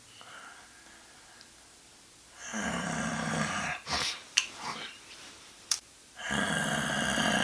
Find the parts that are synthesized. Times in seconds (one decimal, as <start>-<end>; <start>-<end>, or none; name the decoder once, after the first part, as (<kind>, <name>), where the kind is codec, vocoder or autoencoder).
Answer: 2.5-5.9 (vocoder, BigVGAN v2)